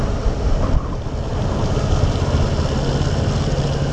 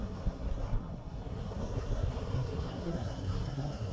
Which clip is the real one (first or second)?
first